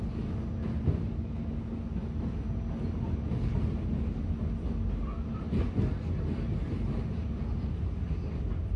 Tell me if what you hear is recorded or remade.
recorded